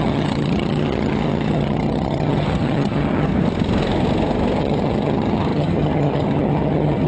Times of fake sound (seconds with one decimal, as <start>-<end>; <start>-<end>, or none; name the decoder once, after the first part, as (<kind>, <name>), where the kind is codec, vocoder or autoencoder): 0.0-3.3 (vocoder, HiFi-GAN); 4.6-7.1